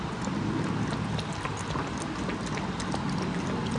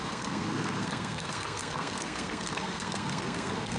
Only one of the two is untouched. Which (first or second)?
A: first